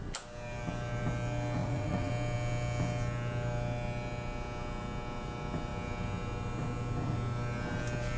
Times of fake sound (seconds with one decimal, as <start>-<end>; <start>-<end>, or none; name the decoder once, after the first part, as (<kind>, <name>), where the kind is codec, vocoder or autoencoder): 1.6-2.1 (vocoder, Vocos)